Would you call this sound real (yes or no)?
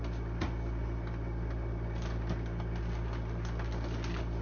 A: yes